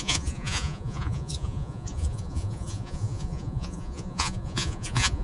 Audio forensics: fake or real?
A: fake